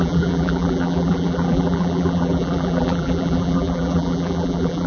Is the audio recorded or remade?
remade